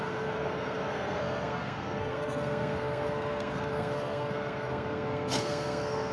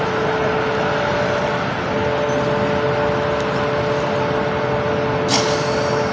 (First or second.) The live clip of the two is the second